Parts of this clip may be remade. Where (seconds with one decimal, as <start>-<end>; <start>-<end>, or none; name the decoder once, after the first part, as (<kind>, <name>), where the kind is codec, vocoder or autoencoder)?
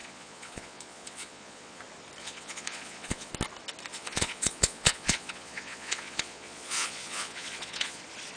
0.0-1.8 (vocoder, Vocos); 2.2-3.3; 3.9-8.0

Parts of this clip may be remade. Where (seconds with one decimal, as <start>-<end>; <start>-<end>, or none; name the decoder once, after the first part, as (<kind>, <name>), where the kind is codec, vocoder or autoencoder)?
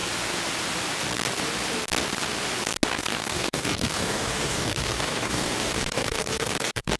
3.1-7.0 (codec, DAC)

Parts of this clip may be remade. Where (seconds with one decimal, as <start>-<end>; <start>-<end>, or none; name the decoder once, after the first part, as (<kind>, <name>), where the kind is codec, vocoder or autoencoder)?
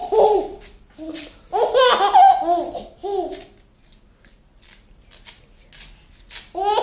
0.0-1.8 (vocoder, BigVGAN v2)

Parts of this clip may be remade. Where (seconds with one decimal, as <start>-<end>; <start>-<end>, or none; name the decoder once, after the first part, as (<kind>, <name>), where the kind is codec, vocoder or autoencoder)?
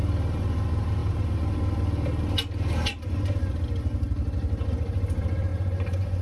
5.5-6.2 (vocoder, Vocos)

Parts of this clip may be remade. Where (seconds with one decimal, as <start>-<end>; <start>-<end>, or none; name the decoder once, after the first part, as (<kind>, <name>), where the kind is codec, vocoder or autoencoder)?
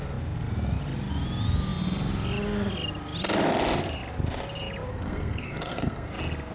4.9-6.1 (codec, SNAC)